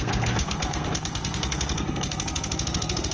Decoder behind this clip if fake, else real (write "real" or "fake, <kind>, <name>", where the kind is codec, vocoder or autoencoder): fake, codec, SNAC